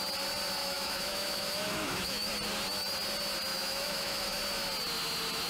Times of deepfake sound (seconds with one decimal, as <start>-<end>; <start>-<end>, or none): 0.6-2.3; 3.5-4.4